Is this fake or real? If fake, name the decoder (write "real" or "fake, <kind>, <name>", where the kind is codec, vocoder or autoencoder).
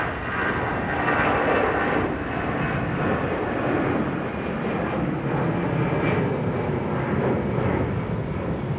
real